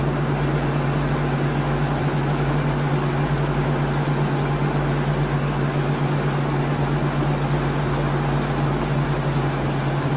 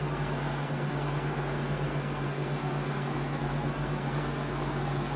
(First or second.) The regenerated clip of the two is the second